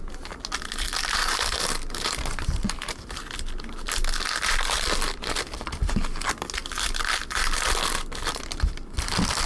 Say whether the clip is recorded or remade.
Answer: recorded